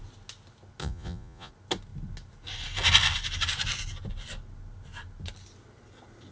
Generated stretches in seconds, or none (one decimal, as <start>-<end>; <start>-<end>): 0.8-1.5